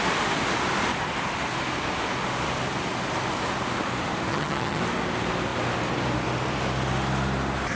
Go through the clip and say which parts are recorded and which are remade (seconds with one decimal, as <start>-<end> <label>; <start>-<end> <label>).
0.0-4.3 recorded; 4.3-4.8 remade; 4.8-7.8 recorded